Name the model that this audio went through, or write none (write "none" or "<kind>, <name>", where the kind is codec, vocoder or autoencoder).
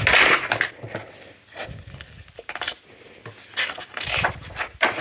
none